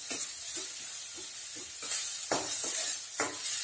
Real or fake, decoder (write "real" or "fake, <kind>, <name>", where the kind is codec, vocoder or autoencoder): real